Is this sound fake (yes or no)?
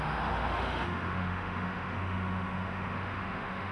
yes